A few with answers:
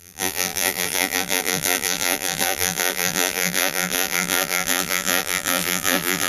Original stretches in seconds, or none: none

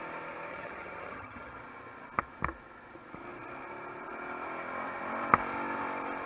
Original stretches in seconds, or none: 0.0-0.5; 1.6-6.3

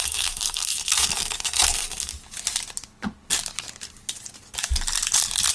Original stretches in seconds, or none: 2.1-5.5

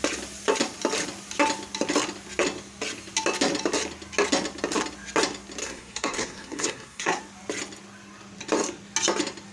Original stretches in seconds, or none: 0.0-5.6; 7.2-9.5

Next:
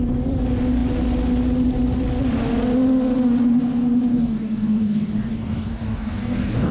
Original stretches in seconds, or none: 0.0-4.1

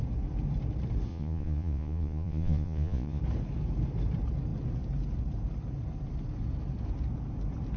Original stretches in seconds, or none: 0.0-1.1; 3.2-7.8

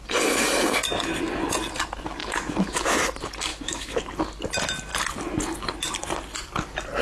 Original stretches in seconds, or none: 0.0-2.2; 3.0-3.5; 4.1-7.0

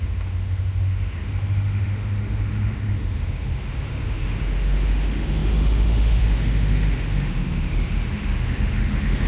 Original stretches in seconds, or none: none